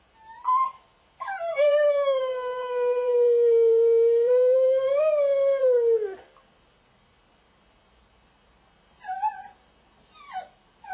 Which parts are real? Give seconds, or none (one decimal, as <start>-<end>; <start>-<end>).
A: 0.0-1.5; 2.2-2.6; 4.8-10.9